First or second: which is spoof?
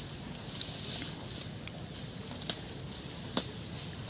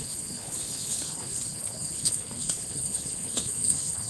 second